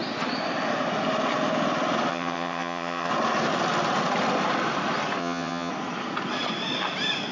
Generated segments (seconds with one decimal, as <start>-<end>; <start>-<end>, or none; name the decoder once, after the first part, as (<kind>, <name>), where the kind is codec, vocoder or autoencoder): 2.1-3.1 (vocoder, HiFi-GAN); 5.2-5.7